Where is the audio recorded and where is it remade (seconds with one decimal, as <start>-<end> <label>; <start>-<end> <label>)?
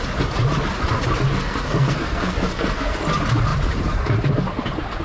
0.0-1.3 recorded; 1.3-3.0 remade; 3.0-5.0 recorded